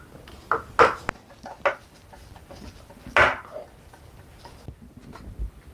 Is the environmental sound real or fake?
real